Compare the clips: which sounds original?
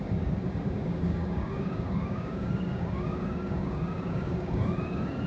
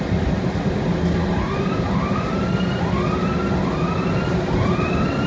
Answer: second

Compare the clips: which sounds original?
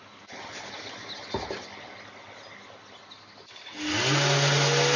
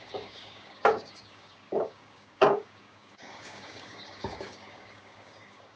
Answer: first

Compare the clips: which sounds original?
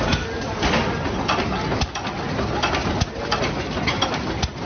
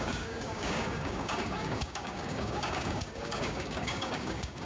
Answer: first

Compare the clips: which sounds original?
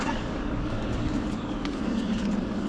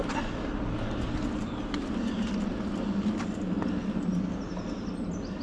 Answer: second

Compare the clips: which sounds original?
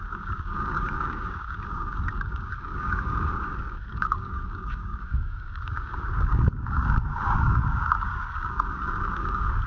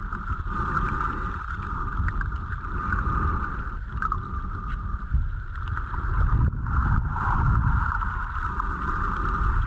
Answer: second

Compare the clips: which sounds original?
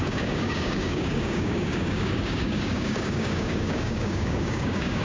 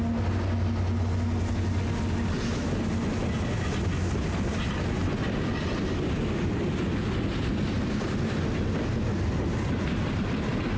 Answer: second